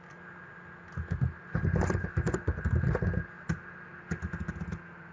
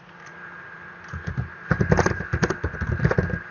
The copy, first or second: second